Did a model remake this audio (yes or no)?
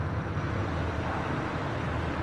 no